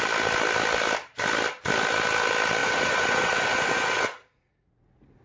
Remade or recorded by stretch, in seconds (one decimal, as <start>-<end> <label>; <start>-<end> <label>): 0.0-2.6 recorded; 2.6-5.2 remade